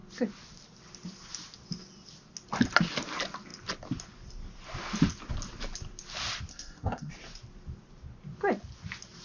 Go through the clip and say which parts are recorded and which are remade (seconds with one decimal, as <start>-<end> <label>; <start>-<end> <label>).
0.0-6.5 recorded; 6.5-7.1 remade; 7.1-9.2 recorded